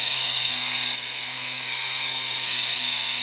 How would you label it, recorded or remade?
remade